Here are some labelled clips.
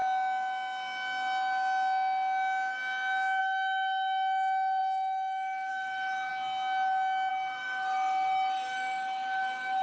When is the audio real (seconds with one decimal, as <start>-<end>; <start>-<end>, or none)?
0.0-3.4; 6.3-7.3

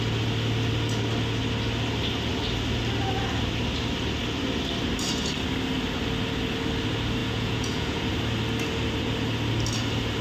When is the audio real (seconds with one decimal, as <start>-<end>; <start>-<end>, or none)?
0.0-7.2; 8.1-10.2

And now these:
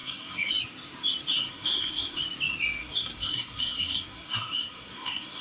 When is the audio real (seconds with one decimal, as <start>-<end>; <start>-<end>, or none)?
0.5-1.3; 2.2-2.8

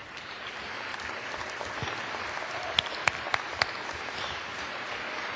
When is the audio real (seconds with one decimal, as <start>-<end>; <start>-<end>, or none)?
0.5-1.4; 2.0-3.0; 5.0-5.4